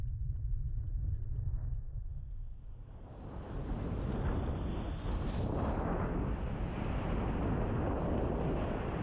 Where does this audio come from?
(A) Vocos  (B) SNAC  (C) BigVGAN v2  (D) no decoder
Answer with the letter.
D